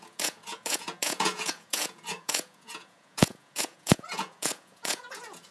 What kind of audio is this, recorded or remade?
remade